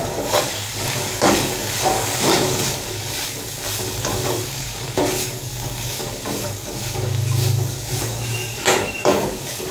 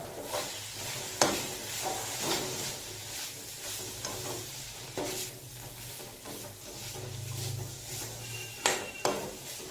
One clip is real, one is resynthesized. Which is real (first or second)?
second